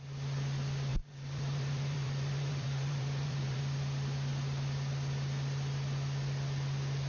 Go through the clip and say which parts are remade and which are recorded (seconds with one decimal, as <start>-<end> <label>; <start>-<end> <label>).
0.0-0.9 recorded; 0.9-3.6 remade; 3.6-7.1 recorded

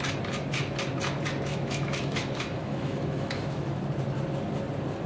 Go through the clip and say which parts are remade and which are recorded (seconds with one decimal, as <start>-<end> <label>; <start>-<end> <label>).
0.0-1.5 recorded; 1.5-3.8 remade; 3.8-5.1 recorded

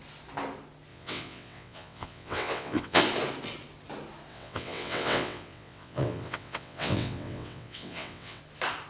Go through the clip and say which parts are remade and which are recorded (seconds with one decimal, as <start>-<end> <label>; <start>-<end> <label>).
0.0-0.9 recorded; 0.9-3.0 remade; 3.0-4.3 recorded; 4.3-8.4 remade; 8.4-8.9 recorded

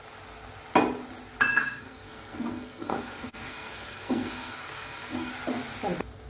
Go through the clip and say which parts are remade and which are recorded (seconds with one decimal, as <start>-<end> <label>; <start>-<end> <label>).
0.0-1.5 recorded; 1.5-5.3 remade; 5.3-6.3 recorded

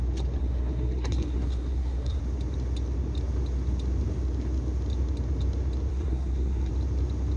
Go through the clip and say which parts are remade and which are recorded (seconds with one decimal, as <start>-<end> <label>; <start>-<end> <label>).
0.0-0.4 recorded; 0.4-2.2 remade; 2.2-5.9 recorded; 5.9-6.7 remade; 6.7-7.4 recorded